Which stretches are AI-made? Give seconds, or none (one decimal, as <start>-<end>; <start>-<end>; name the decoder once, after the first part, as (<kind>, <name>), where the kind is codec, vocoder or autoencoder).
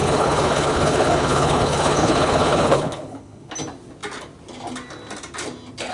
0.0-3.5 (codec, HILCodec)